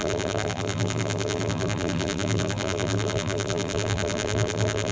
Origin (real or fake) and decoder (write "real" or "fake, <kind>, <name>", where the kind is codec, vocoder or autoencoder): fake, vocoder, BigVGAN v2